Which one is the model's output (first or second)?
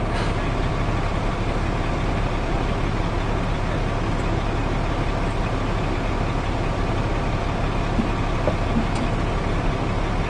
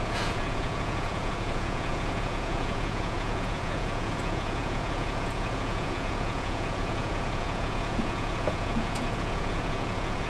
second